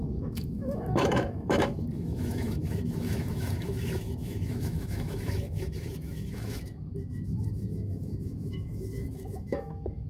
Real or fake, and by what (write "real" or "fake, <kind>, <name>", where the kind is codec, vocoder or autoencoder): fake, autoencoder, DAC-VAE